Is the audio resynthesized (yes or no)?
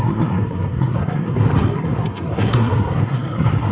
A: yes